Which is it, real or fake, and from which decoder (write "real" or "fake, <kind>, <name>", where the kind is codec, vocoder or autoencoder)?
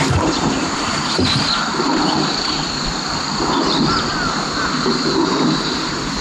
fake, vocoder, BigVGAN v2